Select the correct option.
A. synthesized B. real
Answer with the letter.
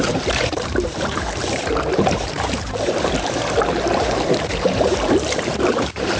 A